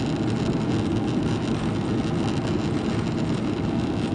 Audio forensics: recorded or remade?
recorded